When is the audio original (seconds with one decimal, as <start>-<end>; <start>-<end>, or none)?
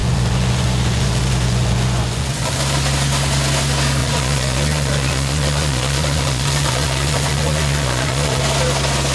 2.6-4.0; 8.4-9.1